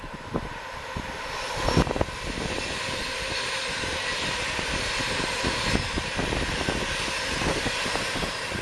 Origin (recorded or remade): recorded